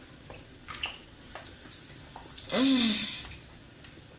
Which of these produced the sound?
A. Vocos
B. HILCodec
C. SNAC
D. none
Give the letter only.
D